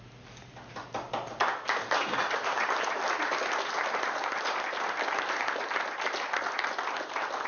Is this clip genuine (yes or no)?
yes